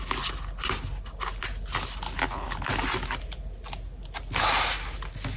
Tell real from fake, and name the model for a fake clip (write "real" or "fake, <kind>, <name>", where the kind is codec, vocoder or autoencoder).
real